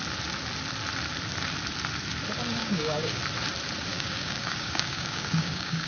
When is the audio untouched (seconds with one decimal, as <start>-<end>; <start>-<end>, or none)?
0.0-2.6; 3.2-3.9